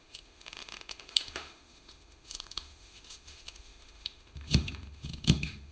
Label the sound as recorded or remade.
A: remade